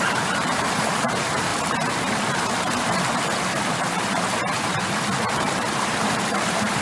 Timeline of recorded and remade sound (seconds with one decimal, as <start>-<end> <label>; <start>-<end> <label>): 0.0-1.5 remade; 1.5-5.2 recorded; 5.2-6.8 remade

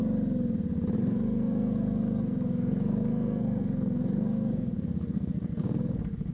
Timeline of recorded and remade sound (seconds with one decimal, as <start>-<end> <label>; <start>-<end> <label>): 0.0-1.0 recorded; 1.0-6.3 remade